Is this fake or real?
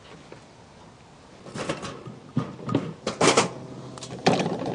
real